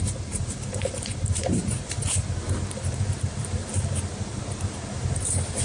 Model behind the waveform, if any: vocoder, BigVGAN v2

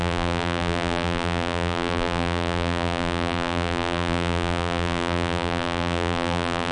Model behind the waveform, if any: vocoder, BigVGAN v2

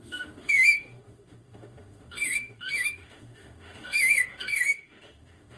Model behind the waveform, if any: autoencoder, DAC-VAE